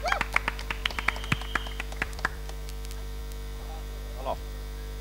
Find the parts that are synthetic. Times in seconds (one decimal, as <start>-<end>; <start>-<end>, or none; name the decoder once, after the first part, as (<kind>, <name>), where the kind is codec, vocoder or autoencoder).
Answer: 0.8-3.2 (vocoder, BigVGAN v2); 3.6-5.0